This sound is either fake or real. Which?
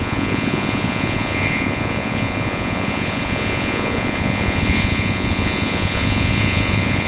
fake